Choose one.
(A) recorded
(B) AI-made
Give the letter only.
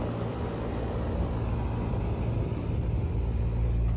A